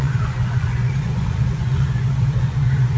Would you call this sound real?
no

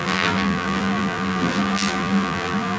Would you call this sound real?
no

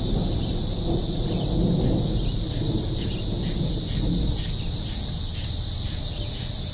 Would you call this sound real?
yes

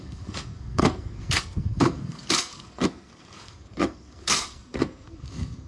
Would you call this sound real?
no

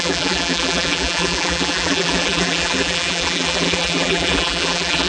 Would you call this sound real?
no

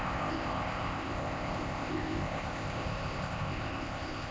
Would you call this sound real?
no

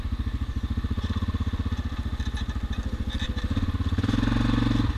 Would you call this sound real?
yes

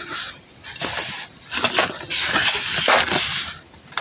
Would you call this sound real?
yes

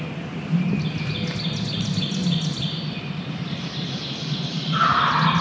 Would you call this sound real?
yes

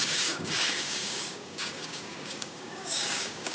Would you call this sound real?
no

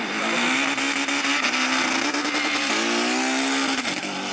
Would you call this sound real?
yes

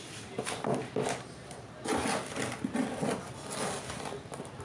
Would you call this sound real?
yes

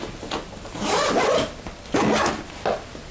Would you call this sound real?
yes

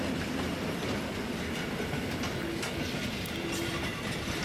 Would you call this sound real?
yes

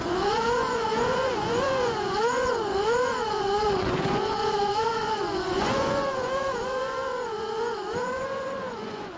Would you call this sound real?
no